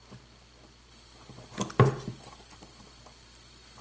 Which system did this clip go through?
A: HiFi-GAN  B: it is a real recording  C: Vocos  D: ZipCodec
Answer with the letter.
B